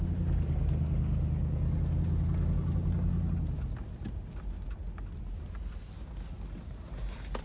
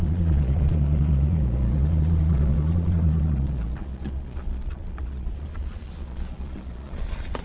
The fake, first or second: second